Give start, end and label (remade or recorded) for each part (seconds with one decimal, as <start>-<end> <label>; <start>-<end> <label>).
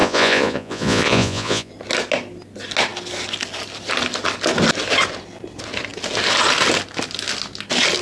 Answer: 0.0-1.7 remade; 1.7-8.0 recorded